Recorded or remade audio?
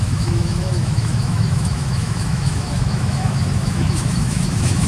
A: remade